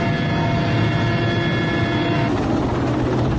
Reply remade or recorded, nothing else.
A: recorded